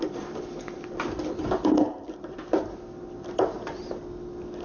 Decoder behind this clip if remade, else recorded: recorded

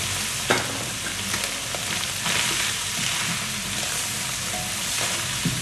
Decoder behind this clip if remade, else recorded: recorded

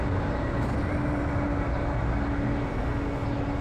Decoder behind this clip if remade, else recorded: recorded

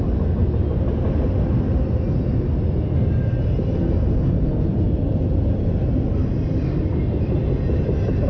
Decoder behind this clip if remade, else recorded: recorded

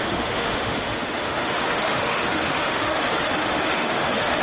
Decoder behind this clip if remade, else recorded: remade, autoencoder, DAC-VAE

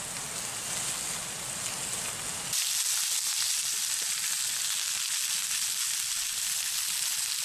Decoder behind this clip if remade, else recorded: recorded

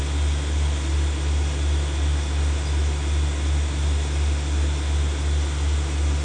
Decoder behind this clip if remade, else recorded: recorded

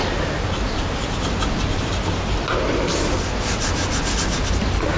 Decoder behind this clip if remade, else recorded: recorded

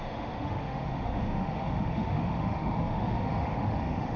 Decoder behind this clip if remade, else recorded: remade, autoencoder, DAC-VAE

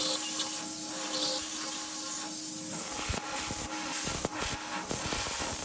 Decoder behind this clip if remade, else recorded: recorded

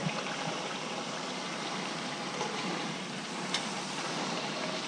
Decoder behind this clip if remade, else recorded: remade, vocoder, BigVGAN v2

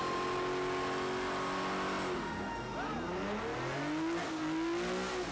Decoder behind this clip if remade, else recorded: recorded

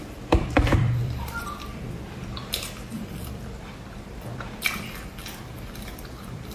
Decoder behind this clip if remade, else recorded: remade, vocoder, BigVGAN v2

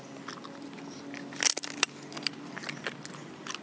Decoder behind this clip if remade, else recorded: recorded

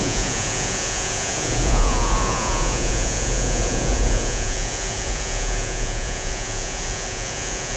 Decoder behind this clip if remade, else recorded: remade, vocoder, Vocos